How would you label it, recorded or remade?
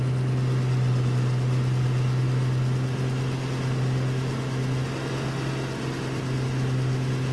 recorded